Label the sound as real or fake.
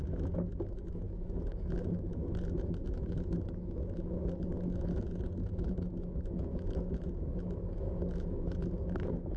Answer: fake